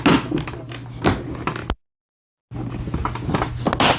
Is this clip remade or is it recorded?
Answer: recorded